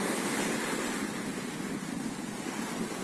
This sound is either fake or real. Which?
real